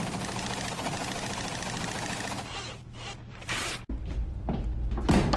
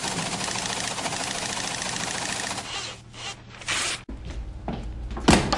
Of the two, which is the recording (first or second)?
second